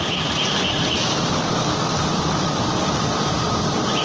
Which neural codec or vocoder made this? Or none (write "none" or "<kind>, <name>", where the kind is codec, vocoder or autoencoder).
none